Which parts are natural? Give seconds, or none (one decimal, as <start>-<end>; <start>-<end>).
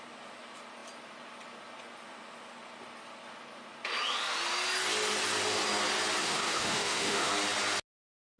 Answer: 0.0-6.2; 7.3-8.4